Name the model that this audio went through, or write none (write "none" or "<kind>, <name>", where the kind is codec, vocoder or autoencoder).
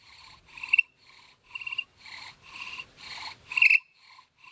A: none